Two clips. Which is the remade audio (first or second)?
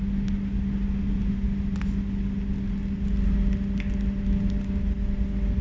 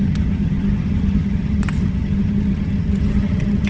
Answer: second